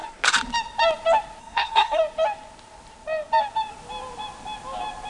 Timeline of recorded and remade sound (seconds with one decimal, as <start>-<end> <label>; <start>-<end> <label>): 0.0-1.4 recorded; 1.4-2.0 remade; 2.0-5.1 recorded